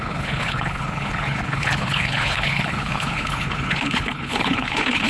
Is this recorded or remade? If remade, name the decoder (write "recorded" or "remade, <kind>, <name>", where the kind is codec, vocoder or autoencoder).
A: remade, codec, HILCodec